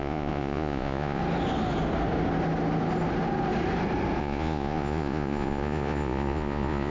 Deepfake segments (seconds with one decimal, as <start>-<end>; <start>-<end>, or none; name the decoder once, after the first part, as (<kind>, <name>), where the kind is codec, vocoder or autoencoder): 0.0-1.2 (vocoder, Vocos); 4.2-6.9